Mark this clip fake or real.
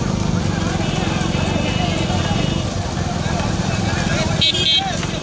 real